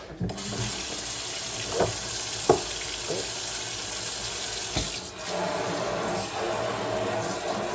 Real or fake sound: real